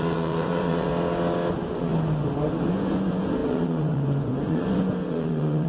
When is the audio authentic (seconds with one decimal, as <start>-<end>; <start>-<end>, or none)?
0.9-1.5; 1.9-2.7